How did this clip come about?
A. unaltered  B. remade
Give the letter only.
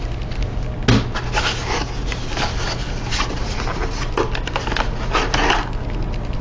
A